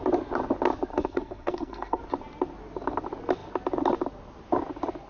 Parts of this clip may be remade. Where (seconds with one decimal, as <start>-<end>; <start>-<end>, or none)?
0.9-2.0